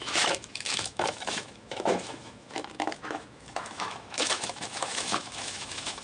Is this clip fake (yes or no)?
yes